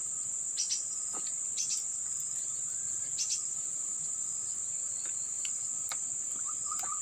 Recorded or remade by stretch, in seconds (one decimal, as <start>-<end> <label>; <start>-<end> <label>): 0.0-7.0 recorded